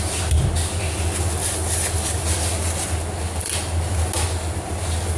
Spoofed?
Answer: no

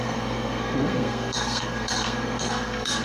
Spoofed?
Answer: yes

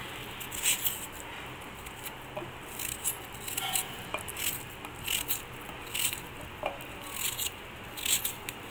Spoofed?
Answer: no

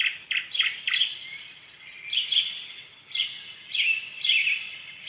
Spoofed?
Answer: no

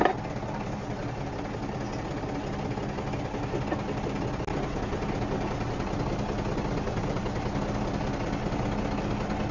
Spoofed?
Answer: no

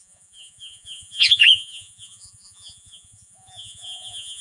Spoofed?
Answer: yes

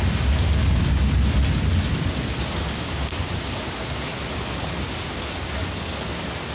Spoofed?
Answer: no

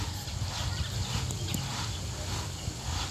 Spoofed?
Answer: no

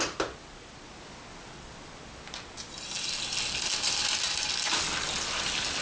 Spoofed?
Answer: no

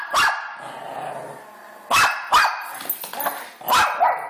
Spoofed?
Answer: no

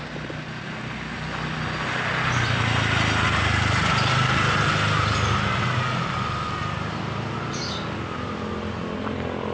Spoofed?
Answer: no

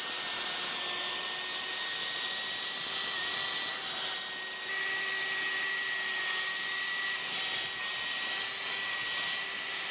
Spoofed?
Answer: no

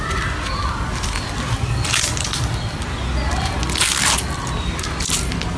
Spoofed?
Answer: no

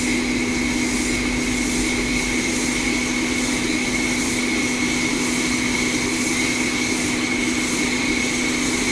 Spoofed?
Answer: no